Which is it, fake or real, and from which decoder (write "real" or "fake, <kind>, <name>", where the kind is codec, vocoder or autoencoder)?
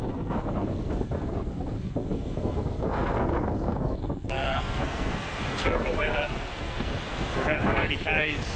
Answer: fake, codec, SNAC